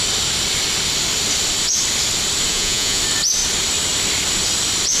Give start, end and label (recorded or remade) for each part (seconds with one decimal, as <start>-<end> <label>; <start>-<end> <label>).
0.0-2.5 recorded; 2.5-3.0 remade; 3.0-5.0 recorded